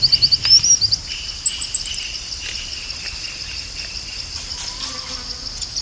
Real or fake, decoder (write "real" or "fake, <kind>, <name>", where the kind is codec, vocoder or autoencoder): real